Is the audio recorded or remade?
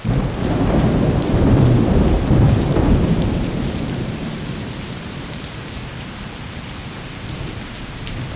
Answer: remade